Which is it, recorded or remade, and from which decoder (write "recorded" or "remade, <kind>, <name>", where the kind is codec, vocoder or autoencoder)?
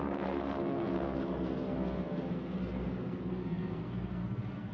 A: remade, codec, SNAC